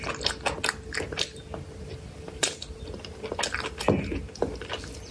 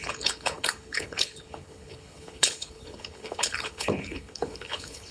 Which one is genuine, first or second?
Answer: first